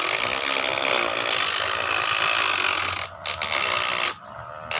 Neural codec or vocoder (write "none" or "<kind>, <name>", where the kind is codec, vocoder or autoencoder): none